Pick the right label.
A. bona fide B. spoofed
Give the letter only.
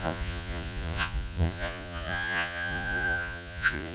B